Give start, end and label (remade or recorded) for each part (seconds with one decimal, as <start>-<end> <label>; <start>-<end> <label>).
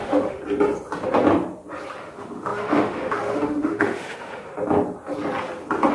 0.0-0.4 remade; 0.4-2.0 recorded; 2.0-4.5 remade; 4.5-5.9 recorded